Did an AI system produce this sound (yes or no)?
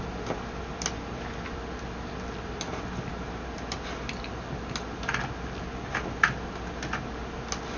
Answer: no